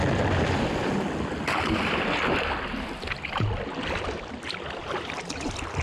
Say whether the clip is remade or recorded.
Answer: recorded